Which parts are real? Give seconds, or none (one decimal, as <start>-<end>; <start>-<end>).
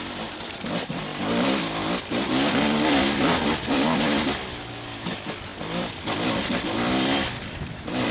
0.0-1.1; 4.3-5.5